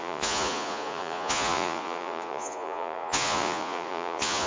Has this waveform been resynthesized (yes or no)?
yes